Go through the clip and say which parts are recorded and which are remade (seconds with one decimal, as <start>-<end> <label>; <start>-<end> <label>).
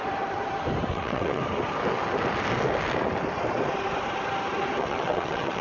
0.0-0.9 recorded; 0.9-1.4 remade; 1.4-4.8 recorded; 4.8-5.6 remade